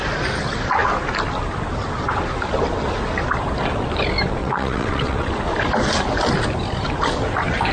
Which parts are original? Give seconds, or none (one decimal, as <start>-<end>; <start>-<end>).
0.0-4.4; 5.3-7.7